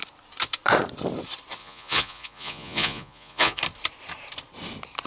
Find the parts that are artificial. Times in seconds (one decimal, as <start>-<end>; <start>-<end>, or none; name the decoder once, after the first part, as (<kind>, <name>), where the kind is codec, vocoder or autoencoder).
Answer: 1.6-3.6 (vocoder, Vocos)